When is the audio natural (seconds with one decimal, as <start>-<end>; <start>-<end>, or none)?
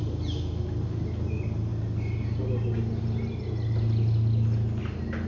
0.0-5.3